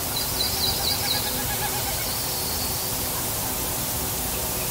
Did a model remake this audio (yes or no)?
no